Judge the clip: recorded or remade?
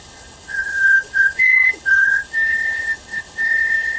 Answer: remade